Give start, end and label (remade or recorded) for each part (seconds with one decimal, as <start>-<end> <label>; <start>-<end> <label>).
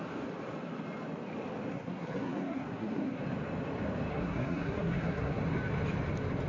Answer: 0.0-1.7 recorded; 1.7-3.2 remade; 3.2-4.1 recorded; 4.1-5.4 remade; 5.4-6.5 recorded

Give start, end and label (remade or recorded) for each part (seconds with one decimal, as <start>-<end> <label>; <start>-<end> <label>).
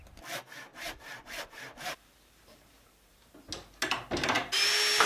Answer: 0.0-0.7 recorded; 0.7-3.3 remade; 3.3-5.1 recorded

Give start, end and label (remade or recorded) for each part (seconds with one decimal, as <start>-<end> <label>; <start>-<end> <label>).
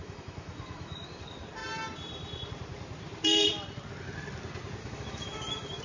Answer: 0.0-1.2 remade; 1.2-4.8 recorded; 4.8-5.8 remade